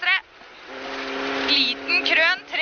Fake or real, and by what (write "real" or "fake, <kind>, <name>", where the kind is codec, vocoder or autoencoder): real